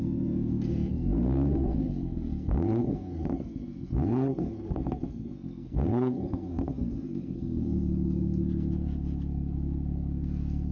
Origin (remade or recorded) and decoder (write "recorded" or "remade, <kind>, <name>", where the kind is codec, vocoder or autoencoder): remade, codec, SNAC